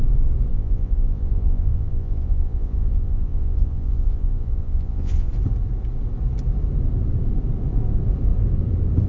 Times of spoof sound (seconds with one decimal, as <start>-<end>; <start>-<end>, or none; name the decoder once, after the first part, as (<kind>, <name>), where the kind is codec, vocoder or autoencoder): 0.5-5.3 (vocoder, Vocos)